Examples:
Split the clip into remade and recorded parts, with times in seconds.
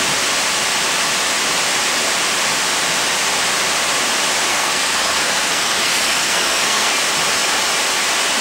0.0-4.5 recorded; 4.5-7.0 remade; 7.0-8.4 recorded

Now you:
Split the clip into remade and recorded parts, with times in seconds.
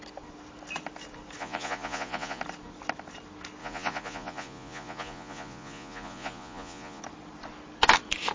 0.0-1.4 recorded; 1.4-2.4 remade; 2.4-3.6 recorded; 3.6-7.0 remade; 7.0-8.3 recorded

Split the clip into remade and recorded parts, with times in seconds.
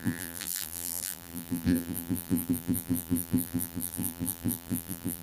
0.0-5.2 remade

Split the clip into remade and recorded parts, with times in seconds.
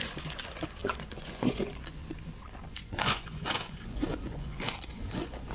0.0-2.0 remade; 2.0-2.7 recorded; 2.7-5.5 remade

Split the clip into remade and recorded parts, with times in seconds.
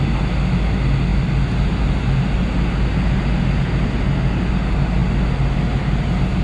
0.0-6.4 recorded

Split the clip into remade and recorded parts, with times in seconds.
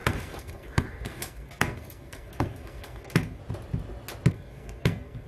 0.0-3.4 remade; 3.4-4.3 recorded; 4.3-5.3 remade